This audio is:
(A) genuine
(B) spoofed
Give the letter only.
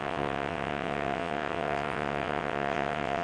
B